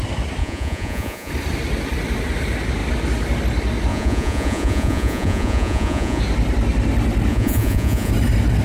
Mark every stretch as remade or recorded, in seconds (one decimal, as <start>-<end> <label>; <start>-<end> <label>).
0.0-0.4 recorded; 0.4-1.3 remade; 1.3-3.9 recorded; 3.9-6.2 remade; 6.2-7.3 recorded; 7.3-8.1 remade; 8.1-8.6 recorded